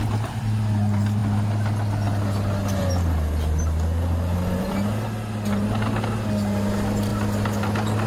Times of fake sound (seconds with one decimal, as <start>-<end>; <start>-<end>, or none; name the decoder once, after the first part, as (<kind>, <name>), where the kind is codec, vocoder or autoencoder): none